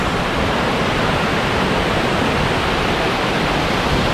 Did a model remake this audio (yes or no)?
yes